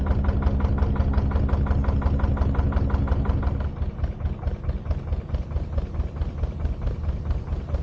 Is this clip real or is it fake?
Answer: real